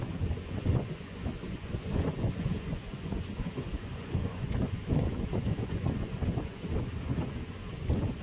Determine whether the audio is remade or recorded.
remade